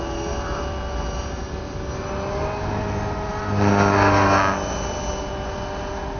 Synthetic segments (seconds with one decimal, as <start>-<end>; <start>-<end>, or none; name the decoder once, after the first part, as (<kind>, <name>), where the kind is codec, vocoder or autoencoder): none